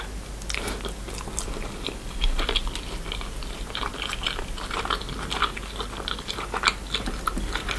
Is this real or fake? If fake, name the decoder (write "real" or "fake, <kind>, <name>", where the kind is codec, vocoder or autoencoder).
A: real